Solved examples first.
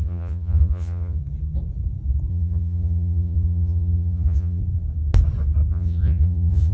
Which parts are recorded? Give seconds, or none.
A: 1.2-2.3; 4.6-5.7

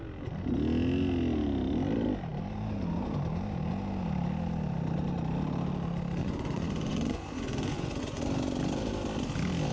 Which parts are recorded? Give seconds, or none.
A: 0.0-6.2; 8.2-9.7